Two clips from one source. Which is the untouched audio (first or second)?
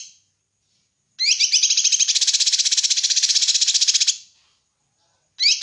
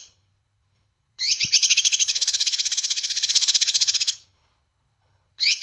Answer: first